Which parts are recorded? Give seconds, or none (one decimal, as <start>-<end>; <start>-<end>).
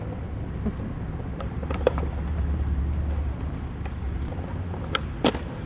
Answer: 0.0-1.3; 2.8-5.7